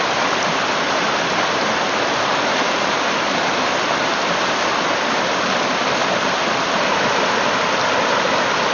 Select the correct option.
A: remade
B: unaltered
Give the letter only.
B